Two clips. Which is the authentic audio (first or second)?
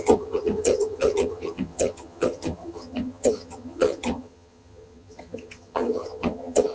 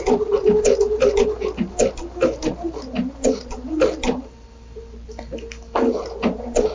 second